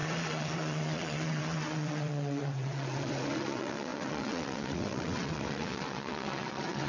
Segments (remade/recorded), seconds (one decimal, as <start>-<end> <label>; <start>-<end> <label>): 0.0-6.9 remade

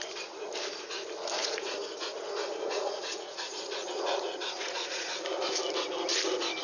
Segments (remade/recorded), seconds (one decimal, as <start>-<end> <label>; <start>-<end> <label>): 0.0-1.4 recorded; 1.4-5.1 remade; 5.1-6.6 recorded

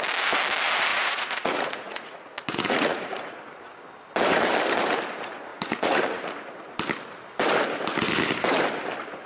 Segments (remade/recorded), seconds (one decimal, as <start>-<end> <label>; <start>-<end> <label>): 0.0-0.9 recorded; 0.9-3.4 remade; 3.4-5.5 recorded; 5.5-6.4 remade; 6.4-9.3 recorded

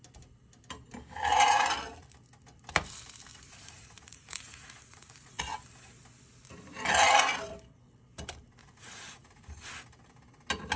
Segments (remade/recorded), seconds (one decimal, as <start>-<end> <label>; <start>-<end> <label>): 0.0-3.3 recorded; 3.3-5.4 remade; 5.4-8.6 recorded; 8.6-9.7 remade; 9.7-10.8 recorded

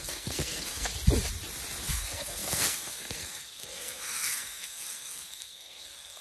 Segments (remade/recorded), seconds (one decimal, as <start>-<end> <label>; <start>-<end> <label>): 0.0-0.9 remade; 0.9-1.9 recorded; 1.9-6.2 remade